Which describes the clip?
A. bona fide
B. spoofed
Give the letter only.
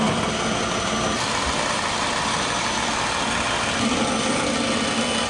A